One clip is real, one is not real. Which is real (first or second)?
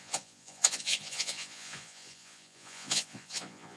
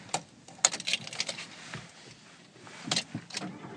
second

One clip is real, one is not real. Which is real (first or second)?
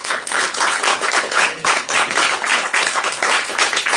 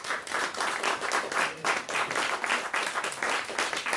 second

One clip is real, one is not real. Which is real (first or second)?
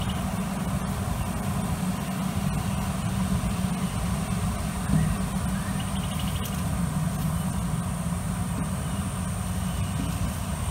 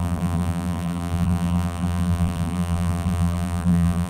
first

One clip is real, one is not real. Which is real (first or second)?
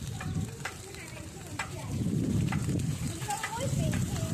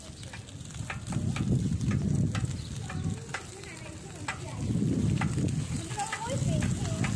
second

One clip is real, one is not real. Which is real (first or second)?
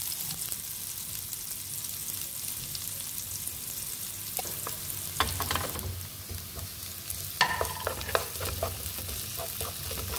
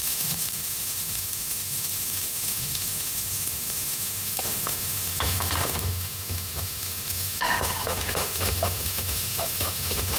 first